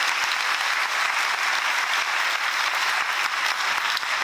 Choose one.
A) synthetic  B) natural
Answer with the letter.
B